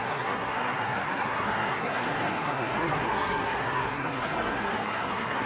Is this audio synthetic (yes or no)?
yes